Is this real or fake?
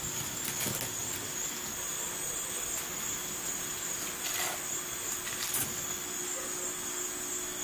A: real